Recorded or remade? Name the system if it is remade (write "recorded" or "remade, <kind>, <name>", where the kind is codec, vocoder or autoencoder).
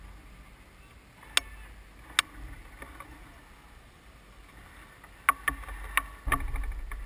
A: recorded